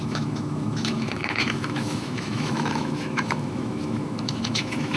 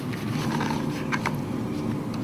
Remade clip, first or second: first